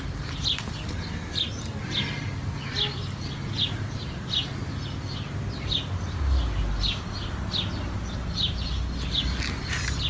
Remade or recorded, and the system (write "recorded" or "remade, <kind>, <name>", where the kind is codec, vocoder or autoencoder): recorded